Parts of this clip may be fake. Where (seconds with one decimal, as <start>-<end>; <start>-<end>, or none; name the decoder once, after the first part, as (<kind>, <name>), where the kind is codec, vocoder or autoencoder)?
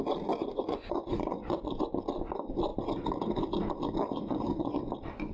0.4-1.7 (vocoder, Vocos); 4.2-4.8